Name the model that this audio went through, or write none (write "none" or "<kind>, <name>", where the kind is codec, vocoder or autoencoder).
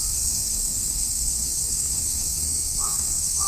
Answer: codec, SNAC